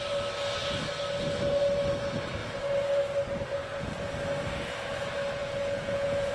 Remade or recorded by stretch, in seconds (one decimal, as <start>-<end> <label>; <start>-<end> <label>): 0.0-3.6 recorded; 3.6-4.1 remade; 4.1-5.4 recorded; 5.4-6.3 remade